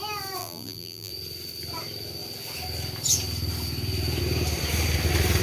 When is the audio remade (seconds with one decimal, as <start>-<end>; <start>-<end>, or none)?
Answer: 0.4-1.1